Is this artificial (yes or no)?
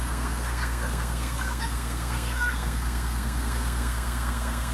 yes